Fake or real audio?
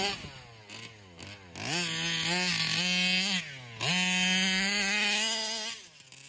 real